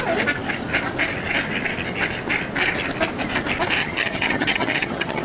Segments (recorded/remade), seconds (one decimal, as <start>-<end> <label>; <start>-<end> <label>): 0.0-3.8 recorded; 3.8-5.2 remade